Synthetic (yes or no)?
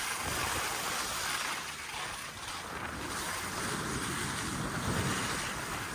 no